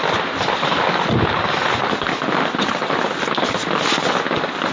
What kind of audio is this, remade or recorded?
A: recorded